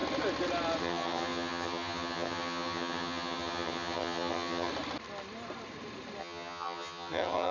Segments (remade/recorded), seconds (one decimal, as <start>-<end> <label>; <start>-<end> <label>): 0.0-0.8 recorded; 0.8-4.7 remade; 4.7-6.2 recorded; 6.2-7.5 remade